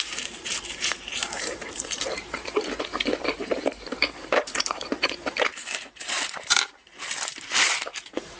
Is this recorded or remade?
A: remade